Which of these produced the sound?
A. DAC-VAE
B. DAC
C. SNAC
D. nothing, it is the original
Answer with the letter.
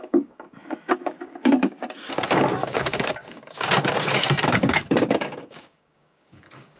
B